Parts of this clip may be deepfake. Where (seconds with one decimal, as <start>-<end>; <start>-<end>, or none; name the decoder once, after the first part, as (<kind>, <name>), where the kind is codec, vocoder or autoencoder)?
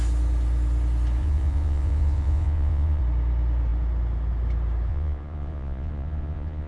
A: 1.2-3.0 (vocoder, Vocos); 4.9-6.7